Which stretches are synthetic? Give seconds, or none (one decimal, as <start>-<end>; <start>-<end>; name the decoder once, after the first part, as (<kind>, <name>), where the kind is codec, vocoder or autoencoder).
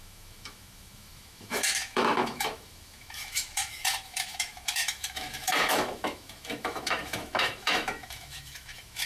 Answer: 0.0-9.1 (autoencoder, DAC-VAE)